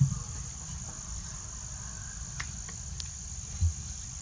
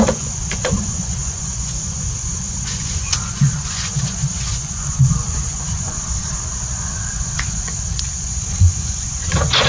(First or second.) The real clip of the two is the first